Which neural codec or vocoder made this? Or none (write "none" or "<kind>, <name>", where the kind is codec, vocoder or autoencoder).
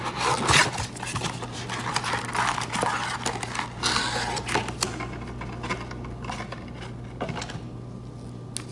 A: none